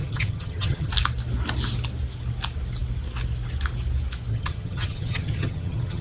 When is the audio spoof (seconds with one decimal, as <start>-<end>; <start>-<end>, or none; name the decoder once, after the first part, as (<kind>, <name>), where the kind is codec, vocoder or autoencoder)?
0.0-0.9 (vocoder, HiFi-GAN); 4.3-6.0